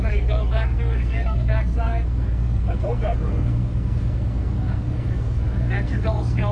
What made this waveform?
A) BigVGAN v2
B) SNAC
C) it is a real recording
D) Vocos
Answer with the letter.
B